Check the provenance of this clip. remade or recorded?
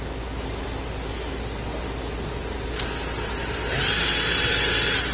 recorded